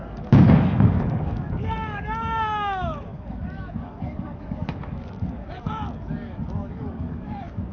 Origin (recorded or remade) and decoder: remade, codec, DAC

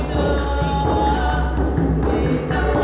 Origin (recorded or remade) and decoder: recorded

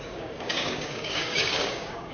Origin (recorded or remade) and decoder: remade, codec, DAC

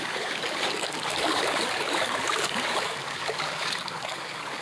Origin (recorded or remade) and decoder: remade, codec, DAC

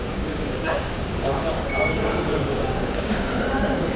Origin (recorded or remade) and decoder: remade, codec, DAC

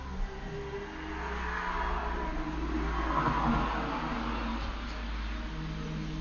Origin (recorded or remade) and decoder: recorded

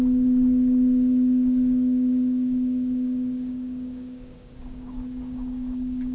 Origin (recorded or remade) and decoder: remade, codec, DAC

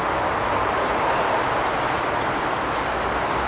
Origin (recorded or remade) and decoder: recorded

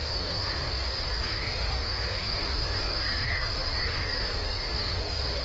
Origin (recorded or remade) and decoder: remade, codec, DAC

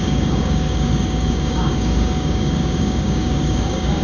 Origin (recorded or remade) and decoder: remade, codec, DAC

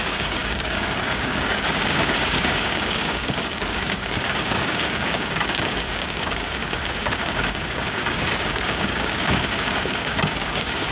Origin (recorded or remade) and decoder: remade, codec, DAC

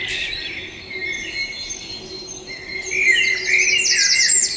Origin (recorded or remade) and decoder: recorded